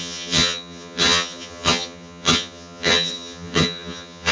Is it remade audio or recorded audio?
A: remade